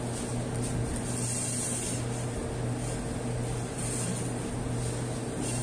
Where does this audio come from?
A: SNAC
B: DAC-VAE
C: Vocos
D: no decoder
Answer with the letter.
D